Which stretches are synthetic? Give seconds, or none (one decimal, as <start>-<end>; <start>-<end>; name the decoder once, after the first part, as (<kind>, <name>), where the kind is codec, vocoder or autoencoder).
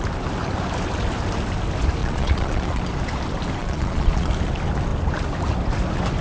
2.0-2.8 (vocoder, Vocos); 3.6-4.3